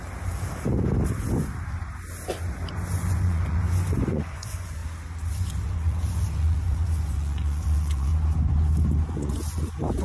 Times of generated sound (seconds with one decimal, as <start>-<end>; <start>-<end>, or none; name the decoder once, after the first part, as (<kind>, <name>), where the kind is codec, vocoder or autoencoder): 2.7-4.8 (vocoder, Vocos); 5.3-8.1; 9.1-10.0